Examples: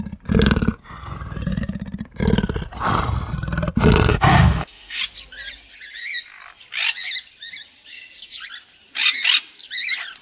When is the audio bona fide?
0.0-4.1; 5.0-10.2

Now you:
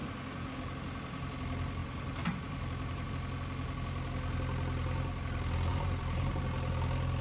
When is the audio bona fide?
0.0-1.8; 3.1-5.7; 6.4-7.2

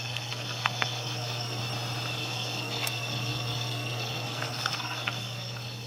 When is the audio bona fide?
1.6-2.1